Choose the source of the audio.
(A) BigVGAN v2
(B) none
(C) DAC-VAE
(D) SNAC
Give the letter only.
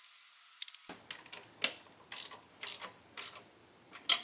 B